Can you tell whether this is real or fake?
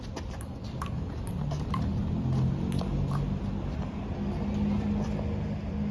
real